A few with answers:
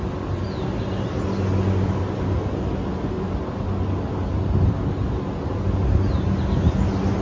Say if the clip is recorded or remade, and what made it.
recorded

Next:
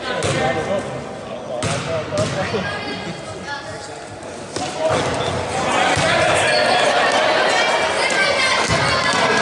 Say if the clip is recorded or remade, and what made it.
recorded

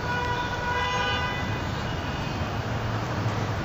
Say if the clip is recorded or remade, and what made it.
recorded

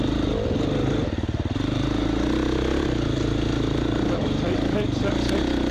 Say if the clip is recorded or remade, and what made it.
recorded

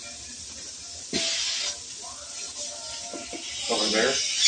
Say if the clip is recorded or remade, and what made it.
recorded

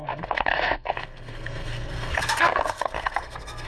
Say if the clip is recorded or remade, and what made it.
remade, codec, SNAC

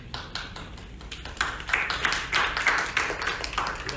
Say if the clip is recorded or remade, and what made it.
recorded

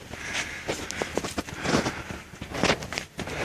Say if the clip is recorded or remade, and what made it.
recorded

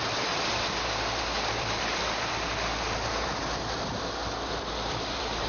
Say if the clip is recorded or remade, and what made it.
remade, vocoder, BigVGAN v2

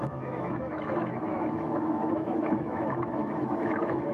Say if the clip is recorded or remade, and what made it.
remade, autoencoder, DAC-VAE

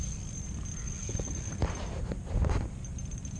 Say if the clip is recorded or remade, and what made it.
recorded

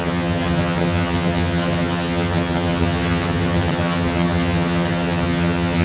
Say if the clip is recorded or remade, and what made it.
remade, vocoder, HiFi-GAN